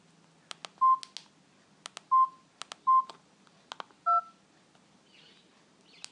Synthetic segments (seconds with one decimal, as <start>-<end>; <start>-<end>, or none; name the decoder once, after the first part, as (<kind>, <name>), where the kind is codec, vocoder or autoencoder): none